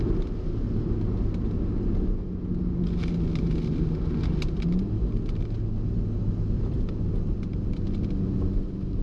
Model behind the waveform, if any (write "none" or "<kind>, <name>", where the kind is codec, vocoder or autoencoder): none